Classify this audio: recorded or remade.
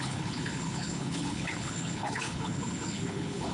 remade